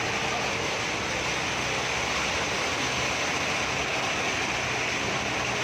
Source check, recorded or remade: recorded